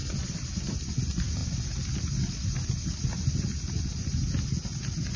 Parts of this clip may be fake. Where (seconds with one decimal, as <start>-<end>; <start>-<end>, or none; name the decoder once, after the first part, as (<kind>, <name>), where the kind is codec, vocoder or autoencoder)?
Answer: none

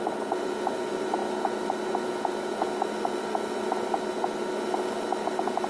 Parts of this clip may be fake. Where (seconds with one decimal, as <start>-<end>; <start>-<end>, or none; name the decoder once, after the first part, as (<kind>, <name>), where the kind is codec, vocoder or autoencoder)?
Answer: none

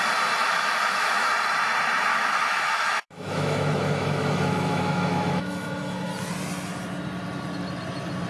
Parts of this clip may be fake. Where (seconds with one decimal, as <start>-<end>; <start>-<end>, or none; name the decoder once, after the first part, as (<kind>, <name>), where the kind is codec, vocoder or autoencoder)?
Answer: 0.4-1.3 (autoencoder, DAC-VAE); 2.1-6.1